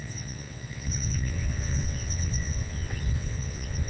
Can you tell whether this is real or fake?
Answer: fake